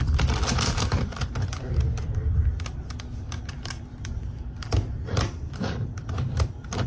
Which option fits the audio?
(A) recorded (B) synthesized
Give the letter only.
B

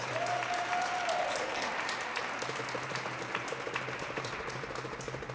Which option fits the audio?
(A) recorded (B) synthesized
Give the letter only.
B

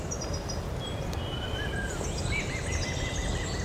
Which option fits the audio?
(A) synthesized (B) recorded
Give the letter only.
B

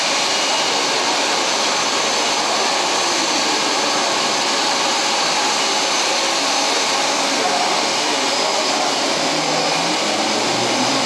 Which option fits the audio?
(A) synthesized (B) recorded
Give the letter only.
B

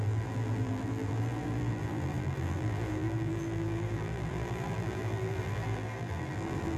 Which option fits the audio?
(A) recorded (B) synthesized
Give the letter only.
B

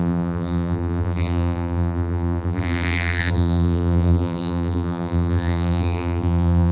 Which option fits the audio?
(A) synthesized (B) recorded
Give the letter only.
A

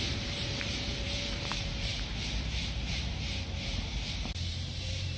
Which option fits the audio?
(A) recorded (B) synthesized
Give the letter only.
B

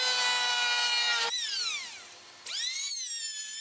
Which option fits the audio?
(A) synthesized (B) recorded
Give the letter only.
A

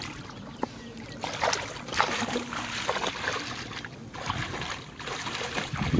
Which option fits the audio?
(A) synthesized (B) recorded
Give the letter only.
B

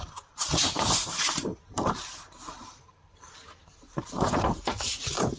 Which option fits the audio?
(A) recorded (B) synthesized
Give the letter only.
B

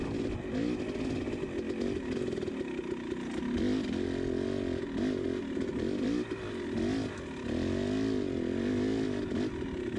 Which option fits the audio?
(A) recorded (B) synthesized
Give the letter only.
A